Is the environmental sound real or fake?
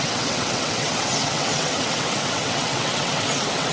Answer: fake